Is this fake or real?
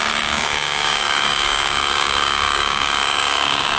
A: fake